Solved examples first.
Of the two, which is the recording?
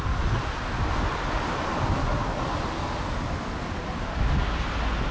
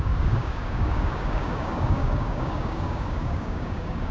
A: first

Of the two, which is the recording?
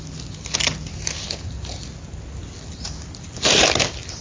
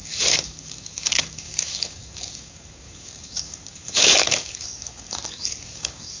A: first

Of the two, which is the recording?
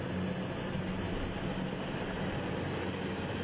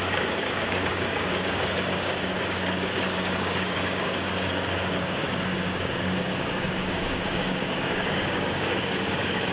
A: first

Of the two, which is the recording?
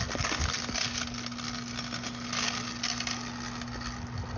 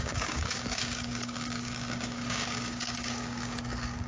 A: first